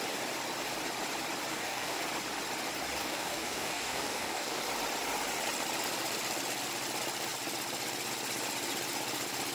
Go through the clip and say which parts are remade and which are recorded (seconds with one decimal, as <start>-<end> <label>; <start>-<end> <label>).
0.0-1.5 recorded; 1.5-2.0 remade; 2.0-3.0 recorded; 3.0-4.6 remade; 4.6-9.5 recorded